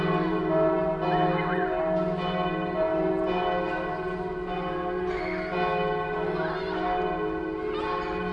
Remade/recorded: recorded